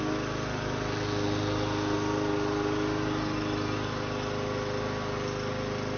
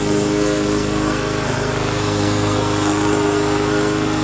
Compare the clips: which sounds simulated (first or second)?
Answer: second